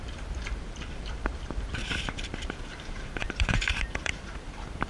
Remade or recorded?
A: remade